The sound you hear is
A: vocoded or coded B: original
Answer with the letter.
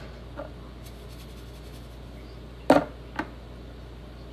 B